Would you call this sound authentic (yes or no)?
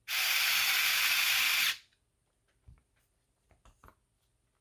yes